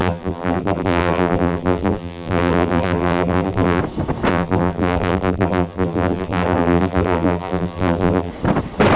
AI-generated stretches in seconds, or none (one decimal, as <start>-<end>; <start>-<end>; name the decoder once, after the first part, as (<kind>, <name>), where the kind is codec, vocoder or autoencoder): 0.0-3.8 (vocoder, BigVGAN v2); 4.3-8.3